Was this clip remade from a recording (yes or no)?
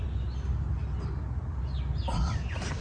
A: no